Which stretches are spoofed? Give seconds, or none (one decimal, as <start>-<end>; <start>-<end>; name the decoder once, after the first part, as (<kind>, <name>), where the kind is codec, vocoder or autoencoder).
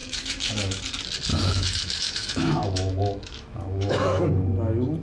0.0-0.8 (autoencoder, DAC-VAE); 1.3-4.3